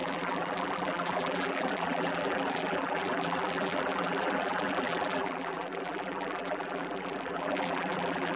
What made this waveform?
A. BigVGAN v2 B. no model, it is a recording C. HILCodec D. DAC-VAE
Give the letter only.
A